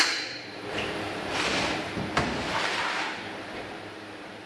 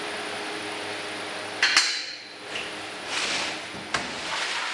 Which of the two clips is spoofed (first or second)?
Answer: first